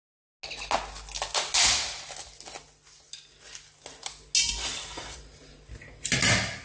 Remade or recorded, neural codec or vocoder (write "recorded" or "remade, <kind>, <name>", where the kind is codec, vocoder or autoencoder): recorded